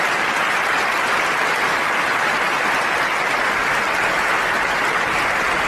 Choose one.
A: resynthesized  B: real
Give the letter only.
B